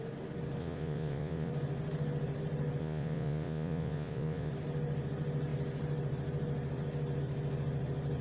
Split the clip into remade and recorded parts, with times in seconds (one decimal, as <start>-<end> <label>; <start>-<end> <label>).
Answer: 0.0-0.6 recorded; 0.6-1.5 remade; 1.5-2.8 recorded; 2.8-4.5 remade; 4.5-8.2 recorded